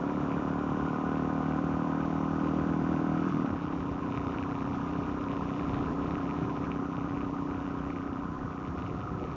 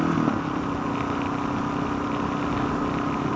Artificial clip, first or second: first